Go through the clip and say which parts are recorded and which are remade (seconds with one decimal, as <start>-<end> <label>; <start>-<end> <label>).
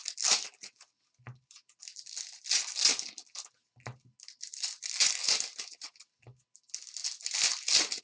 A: 0.0-8.0 recorded